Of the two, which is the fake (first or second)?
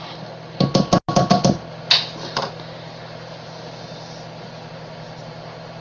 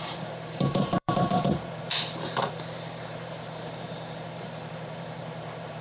second